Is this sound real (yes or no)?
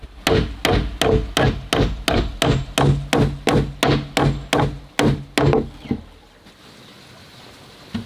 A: yes